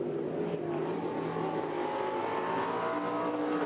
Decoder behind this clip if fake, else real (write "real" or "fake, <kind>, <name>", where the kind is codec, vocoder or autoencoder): real